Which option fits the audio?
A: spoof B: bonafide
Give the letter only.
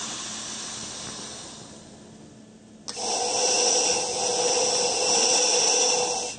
B